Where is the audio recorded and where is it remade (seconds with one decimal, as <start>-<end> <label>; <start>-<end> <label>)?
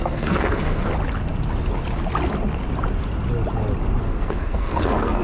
0.0-0.9 remade; 0.9-4.0 recorded; 4.0-5.2 remade